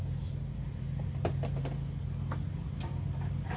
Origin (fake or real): real